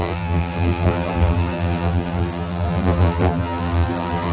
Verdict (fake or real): fake